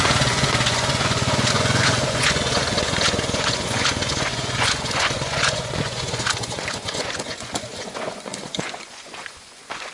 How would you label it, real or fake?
fake